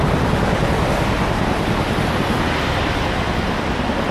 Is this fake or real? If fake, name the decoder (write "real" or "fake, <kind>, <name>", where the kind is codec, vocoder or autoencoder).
real